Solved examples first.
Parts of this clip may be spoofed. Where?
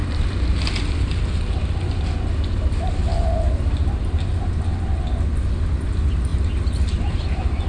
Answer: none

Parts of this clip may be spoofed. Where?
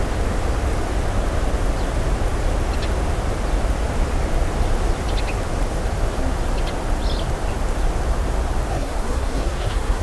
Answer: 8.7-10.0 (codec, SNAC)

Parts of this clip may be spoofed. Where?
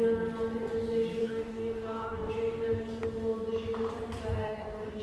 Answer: 1.2-2.3 (codec, DAC); 4.3-5.0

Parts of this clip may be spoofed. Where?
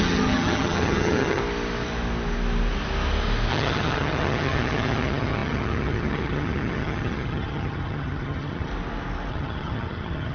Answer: 0.0-1.4 (vocoder, HiFi-GAN); 3.5-8.7; 9.3-10.3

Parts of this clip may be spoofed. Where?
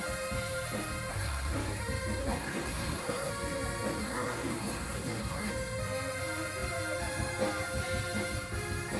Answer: 1.1-1.8 (codec, SNAC); 2.2-3.3; 4.0-5.5